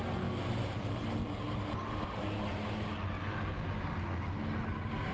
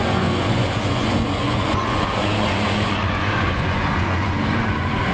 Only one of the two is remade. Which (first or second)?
second